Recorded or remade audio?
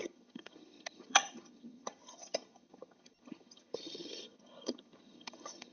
remade